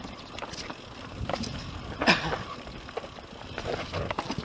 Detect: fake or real real